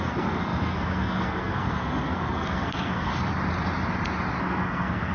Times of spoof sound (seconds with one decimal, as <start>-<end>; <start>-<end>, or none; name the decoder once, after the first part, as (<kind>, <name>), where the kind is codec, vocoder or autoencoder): 0.0-3.1 (codec, SNAC); 4.4-5.1